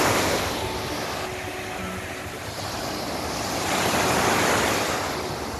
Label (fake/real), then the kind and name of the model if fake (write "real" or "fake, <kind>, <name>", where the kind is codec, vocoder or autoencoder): real